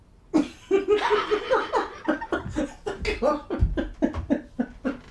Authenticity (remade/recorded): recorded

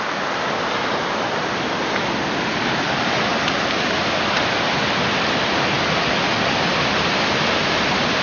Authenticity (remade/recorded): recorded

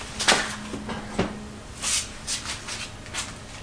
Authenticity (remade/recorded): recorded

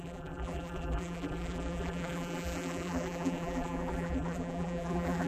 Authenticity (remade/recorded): remade